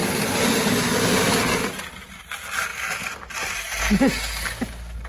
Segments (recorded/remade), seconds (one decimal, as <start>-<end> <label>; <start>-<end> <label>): 0.0-5.1 recorded